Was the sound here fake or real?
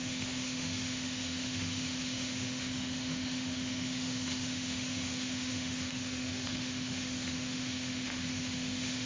fake